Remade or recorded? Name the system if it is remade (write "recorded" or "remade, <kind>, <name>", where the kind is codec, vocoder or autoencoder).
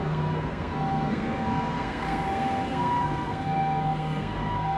remade, codec, SNAC